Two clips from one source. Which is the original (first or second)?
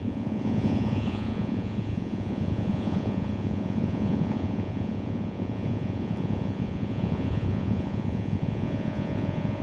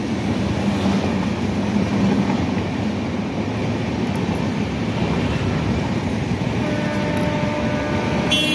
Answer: second